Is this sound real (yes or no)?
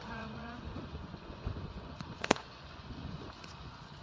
no